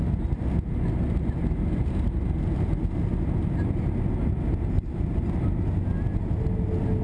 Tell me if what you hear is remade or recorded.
recorded